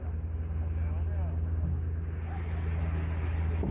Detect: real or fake real